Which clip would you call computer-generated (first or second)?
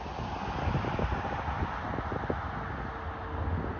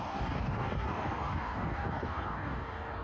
second